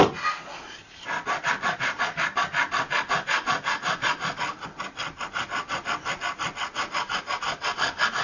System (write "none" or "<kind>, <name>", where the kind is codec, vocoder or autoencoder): none